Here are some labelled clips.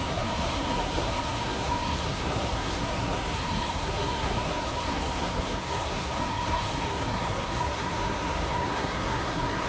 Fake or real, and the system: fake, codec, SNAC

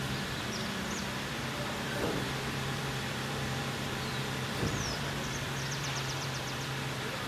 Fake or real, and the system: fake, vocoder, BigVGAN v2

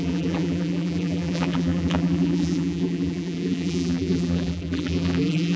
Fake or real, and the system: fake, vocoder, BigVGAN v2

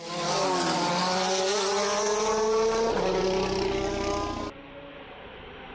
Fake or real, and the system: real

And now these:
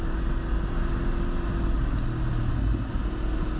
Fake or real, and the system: real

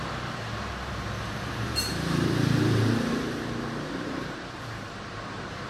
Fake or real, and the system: fake, vocoder, BigVGAN v2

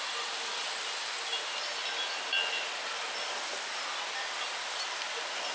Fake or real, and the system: real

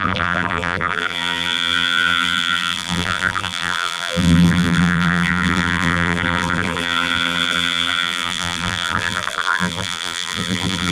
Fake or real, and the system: fake, vocoder, BigVGAN v2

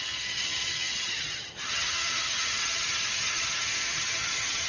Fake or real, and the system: fake, vocoder, HiFi-GAN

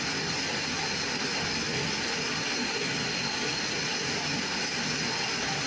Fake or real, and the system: real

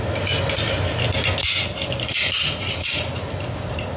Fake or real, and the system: real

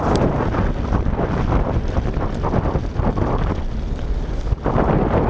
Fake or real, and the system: real